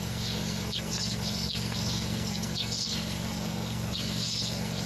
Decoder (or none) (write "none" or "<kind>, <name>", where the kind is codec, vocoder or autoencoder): codec, SNAC